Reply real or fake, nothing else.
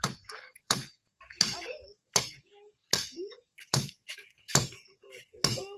fake